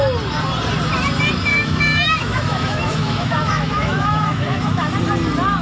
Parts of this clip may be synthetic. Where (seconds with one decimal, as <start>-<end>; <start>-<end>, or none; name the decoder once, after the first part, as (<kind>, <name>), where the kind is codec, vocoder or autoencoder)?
1.5-4.9 (autoencoder, DAC-VAE)